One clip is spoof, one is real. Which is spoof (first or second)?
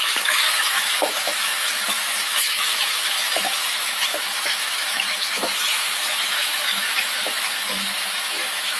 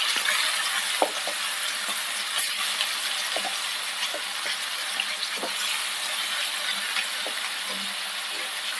first